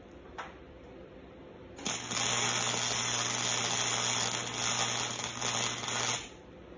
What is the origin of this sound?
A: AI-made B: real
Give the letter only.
B